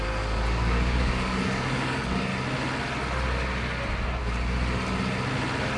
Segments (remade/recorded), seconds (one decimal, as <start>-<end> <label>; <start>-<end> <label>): 0.0-2.3 remade; 2.3-5.8 recorded